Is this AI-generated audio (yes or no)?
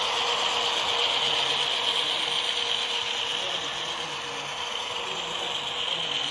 no